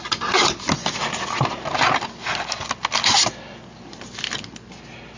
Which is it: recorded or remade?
recorded